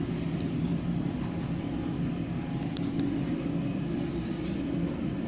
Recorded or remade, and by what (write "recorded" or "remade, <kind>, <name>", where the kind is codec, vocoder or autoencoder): recorded